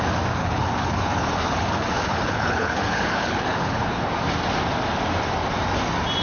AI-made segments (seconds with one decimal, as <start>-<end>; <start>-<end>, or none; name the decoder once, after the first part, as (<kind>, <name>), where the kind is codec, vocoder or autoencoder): 0.4-4.1 (codec, HILCodec)